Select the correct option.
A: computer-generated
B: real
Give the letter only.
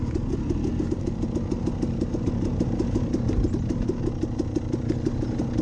B